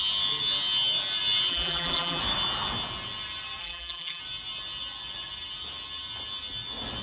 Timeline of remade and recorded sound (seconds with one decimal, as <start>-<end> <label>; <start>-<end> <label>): 0.0-1.5 recorded; 1.5-2.2 remade; 2.2-3.6 recorded; 3.6-4.2 remade; 4.2-7.0 recorded

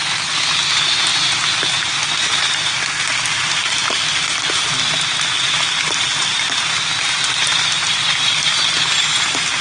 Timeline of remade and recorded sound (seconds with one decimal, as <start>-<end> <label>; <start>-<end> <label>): 0.0-9.6 recorded